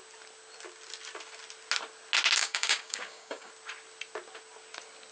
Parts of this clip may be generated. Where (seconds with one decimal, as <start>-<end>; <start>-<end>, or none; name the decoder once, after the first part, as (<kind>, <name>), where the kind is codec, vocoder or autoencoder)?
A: 2.4-3.5 (codec, DAC)